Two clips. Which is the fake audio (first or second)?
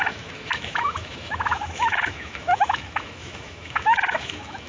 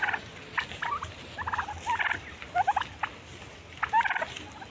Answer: first